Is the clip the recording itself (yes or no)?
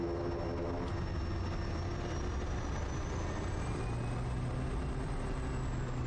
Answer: yes